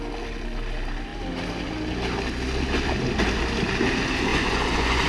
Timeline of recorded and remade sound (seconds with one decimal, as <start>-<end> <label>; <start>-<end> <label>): 0.0-4.3 recorded; 4.3-5.1 remade